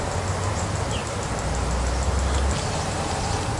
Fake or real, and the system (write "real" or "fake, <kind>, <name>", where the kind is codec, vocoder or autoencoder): real